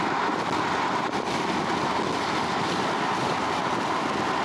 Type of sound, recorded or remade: recorded